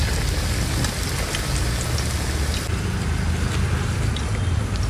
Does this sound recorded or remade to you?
recorded